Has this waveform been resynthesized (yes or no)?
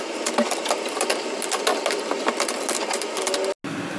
no